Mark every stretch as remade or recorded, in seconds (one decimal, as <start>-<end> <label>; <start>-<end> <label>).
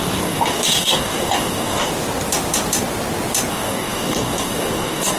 0.0-1.9 remade; 1.9-3.5 recorded; 3.5-5.2 remade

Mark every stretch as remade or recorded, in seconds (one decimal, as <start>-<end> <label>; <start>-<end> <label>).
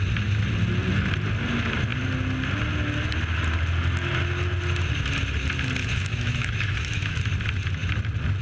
0.0-5.8 recorded; 5.8-7.2 remade; 7.2-8.4 recorded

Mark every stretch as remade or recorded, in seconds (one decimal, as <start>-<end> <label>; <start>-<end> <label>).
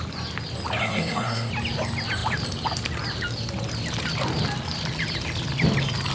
0.0-0.8 recorded; 0.8-1.5 remade; 1.5-6.1 recorded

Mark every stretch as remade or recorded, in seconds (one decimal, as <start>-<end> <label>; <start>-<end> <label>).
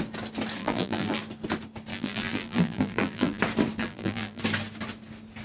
0.0-0.6 recorded; 0.6-1.2 remade; 1.2-1.9 recorded; 1.9-3.4 remade; 3.4-3.8 recorded; 3.8-4.4 remade; 4.4-5.4 recorded